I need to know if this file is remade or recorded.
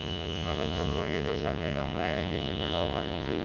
remade